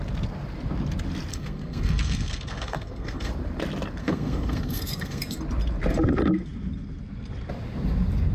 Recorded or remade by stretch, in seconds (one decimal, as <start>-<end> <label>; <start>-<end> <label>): 0.0-1.3 recorded; 1.3-3.3 remade; 3.3-4.0 recorded; 4.0-5.4 remade; 5.4-8.3 recorded

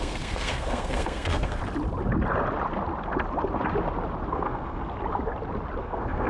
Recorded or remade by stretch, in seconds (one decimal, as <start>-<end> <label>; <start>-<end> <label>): 0.0-1.6 remade; 1.6-4.3 recorded; 4.3-4.8 remade; 4.8-5.8 recorded; 5.8-6.3 remade

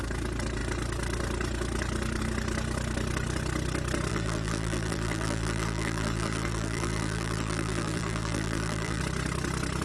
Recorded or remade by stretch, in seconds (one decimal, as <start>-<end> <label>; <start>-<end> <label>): 0.0-4.1 recorded; 4.1-9.0 remade; 9.0-9.8 recorded